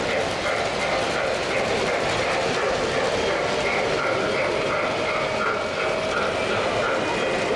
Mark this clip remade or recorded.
recorded